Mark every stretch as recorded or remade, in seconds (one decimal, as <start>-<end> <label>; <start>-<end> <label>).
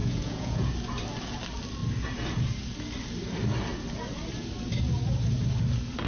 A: 0.0-0.7 remade; 0.7-6.1 recorded